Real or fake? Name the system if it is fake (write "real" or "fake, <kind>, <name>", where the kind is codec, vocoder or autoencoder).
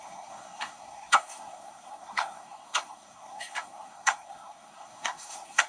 fake, codec, SNAC